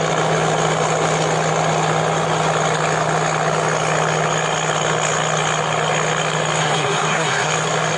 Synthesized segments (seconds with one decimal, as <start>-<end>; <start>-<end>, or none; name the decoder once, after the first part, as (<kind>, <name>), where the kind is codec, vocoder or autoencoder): 6.6-7.5 (codec, SNAC)